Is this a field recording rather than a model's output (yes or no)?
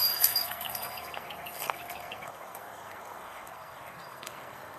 no